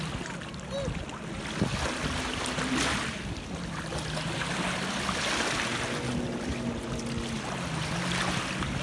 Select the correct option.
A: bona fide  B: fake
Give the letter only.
A